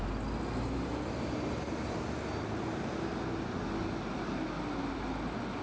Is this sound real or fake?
real